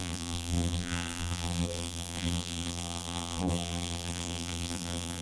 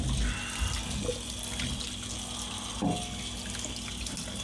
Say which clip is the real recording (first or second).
second